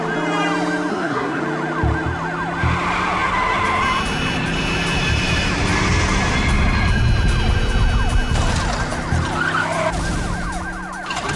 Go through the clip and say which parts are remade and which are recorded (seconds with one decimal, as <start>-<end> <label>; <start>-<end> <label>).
0.0-0.9 recorded; 0.9-1.4 remade; 1.4-11.4 recorded

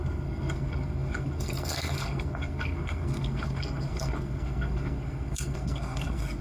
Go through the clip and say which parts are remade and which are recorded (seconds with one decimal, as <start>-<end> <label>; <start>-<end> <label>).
0.0-6.4 remade